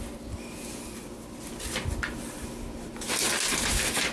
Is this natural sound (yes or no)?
yes